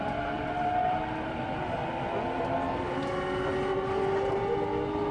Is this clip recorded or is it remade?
recorded